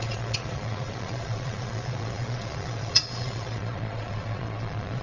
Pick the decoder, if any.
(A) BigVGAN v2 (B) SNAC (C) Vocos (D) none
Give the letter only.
C